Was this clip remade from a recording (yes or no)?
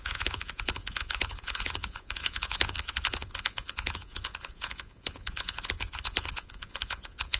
yes